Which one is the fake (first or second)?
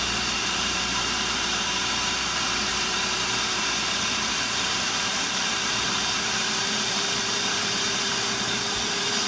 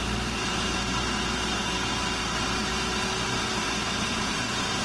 first